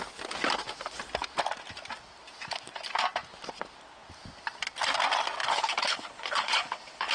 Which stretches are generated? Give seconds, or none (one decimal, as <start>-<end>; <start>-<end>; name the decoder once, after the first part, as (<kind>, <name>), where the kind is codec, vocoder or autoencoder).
5.4-7.1 (codec, HILCodec)